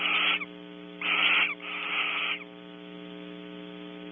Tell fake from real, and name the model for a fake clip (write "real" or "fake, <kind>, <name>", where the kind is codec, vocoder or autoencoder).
real